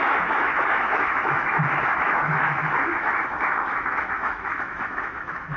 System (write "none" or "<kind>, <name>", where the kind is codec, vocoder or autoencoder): autoencoder, DAC-VAE